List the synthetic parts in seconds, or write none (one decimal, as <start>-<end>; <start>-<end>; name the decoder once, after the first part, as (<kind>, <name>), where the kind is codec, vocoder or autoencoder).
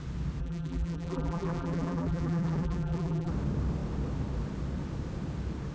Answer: 0.4-3.3 (vocoder, BigVGAN v2)